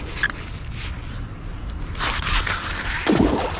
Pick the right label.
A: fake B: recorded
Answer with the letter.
B